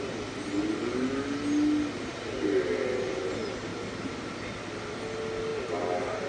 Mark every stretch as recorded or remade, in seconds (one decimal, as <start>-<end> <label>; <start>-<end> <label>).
0.0-3.7 recorded; 3.7-4.7 remade; 4.7-6.3 recorded

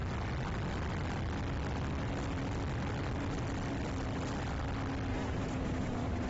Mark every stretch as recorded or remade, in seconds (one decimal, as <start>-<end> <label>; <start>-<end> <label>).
0.0-5.1 recorded; 5.1-6.3 remade

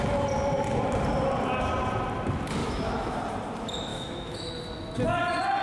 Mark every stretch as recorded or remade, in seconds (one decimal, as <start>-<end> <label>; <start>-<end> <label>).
0.0-2.6 recorded; 2.6-3.2 remade; 3.2-3.9 recorded; 3.9-4.5 remade; 4.5-5.6 recorded

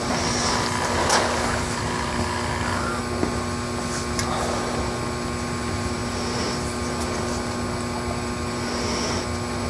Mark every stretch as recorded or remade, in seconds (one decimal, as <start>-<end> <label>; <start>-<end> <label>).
0.0-1.0 recorded; 1.0-3.0 remade; 3.0-9.7 recorded

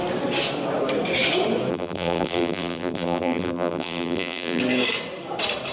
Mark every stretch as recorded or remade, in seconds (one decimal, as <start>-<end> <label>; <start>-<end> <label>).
0.0-1.7 recorded; 1.7-4.6 remade; 4.6-5.7 recorded

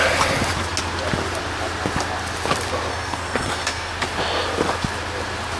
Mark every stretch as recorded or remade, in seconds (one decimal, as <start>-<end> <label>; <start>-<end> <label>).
0.0-2.9 recorded; 2.9-3.9 remade; 3.9-5.6 recorded

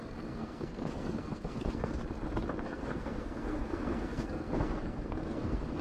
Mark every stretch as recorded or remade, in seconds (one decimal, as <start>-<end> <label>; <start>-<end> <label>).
0.0-2.0 remade; 2.0-2.6 recorded; 2.6-5.8 remade